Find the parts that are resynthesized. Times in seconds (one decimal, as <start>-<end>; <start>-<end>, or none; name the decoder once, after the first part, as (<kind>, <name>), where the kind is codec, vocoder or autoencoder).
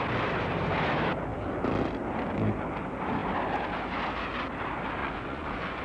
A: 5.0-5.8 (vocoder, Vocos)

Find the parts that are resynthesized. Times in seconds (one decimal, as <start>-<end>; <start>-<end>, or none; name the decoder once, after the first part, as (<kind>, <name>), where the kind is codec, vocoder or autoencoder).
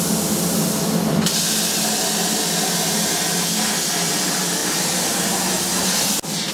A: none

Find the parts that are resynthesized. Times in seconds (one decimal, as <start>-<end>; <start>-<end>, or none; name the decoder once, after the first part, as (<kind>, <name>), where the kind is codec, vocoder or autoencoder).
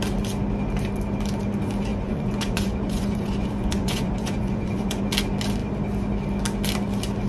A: 1.9-5.0 (vocoder, Vocos)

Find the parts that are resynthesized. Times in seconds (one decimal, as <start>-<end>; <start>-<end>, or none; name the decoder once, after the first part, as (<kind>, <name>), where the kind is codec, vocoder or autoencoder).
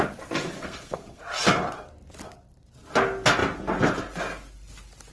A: 0.6-1.2 (codec, SNAC)